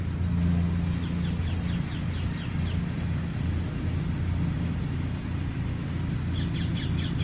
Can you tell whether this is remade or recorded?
recorded